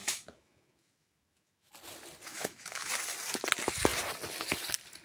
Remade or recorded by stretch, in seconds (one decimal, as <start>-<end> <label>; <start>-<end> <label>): 0.0-1.7 remade; 1.7-2.3 recorded; 2.3-2.9 remade; 2.9-5.0 recorded